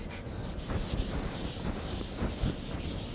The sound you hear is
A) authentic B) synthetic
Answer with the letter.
B